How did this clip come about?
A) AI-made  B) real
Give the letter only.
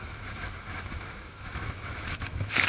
A